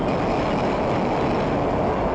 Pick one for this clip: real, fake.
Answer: real